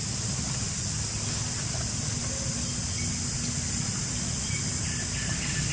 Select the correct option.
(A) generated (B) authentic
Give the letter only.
B